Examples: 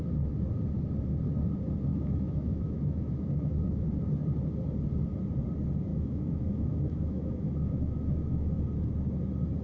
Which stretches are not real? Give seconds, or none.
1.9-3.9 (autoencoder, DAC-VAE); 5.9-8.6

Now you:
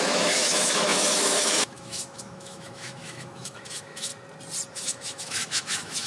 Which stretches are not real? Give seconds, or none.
0.0-4.1 (autoencoder, DAC-VAE); 4.7-6.1

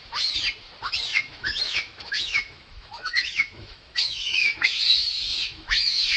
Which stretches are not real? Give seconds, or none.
1.1-4.8 (autoencoder, DAC-VAE); 5.3-6.2

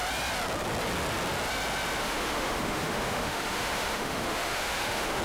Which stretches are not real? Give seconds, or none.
2.0-5.2 (autoencoder, DAC-VAE)

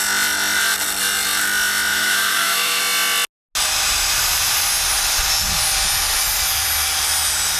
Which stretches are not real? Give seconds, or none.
1.9-2.8 (autoencoder, DAC-VAE)